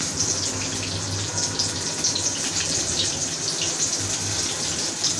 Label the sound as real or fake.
real